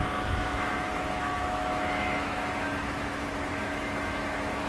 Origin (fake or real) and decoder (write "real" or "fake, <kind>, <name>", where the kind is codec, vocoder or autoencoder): fake, autoencoder, DAC-VAE